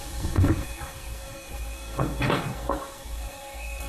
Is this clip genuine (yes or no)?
no